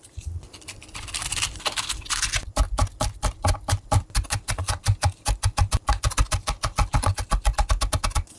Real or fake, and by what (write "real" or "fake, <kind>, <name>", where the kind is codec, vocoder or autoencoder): real